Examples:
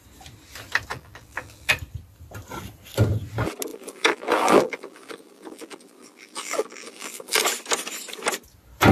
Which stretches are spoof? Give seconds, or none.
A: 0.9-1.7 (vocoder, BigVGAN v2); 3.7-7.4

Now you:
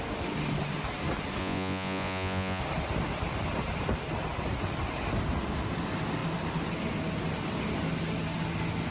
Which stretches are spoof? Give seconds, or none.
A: 1.4-2.6 (vocoder, Vocos)